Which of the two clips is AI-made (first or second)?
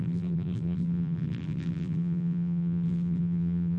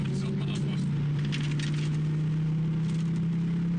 first